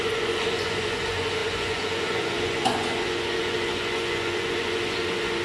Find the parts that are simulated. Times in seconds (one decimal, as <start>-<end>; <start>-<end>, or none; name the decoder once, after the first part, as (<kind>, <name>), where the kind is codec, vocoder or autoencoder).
0.0-5.4 (vocoder, Vocos)